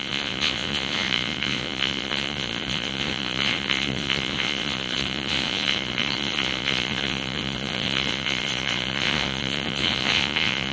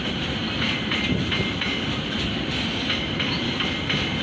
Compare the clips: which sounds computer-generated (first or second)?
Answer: first